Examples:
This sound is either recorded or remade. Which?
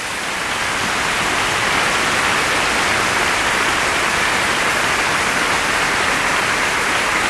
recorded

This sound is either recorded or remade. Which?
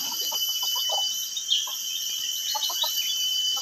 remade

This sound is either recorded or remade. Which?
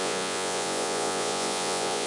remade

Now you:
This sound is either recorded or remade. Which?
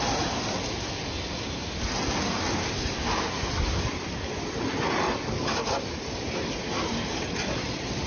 recorded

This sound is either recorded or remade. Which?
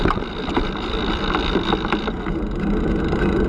recorded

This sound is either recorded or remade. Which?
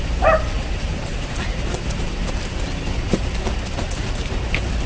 recorded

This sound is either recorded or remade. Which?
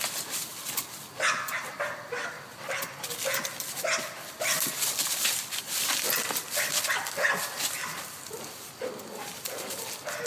recorded